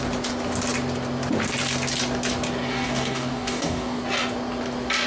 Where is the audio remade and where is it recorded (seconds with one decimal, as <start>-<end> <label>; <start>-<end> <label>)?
0.0-2.7 recorded; 2.7-4.0 remade; 4.0-5.1 recorded